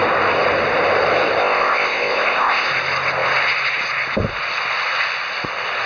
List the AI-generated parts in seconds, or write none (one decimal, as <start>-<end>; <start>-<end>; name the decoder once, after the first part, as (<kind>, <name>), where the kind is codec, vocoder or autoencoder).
1.4-2.7 (codec, ZipCodec)